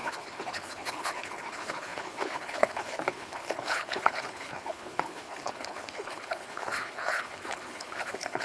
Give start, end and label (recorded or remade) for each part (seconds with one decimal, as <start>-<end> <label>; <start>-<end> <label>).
0.0-8.4 remade